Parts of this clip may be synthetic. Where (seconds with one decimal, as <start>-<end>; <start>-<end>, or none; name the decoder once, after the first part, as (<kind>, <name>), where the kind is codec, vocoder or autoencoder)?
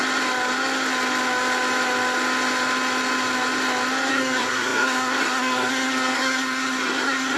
4.1-7.4 (codec, SNAC)